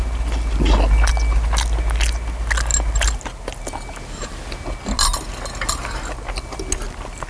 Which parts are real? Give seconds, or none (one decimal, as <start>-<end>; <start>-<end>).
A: 0.0-7.3